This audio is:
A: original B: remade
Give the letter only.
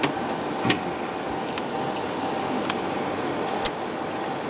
A